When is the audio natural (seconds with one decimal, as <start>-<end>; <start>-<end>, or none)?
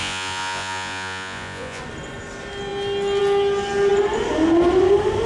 1.8-5.3